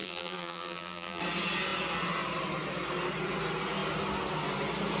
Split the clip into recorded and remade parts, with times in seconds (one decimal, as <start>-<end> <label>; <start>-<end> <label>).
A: 0.0-1.2 remade; 1.2-5.0 recorded